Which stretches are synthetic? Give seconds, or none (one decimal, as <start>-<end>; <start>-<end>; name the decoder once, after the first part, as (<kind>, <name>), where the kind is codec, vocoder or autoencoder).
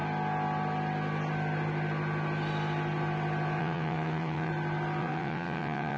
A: 3.6-4.5 (vocoder, WaveNeXt); 5.0-6.0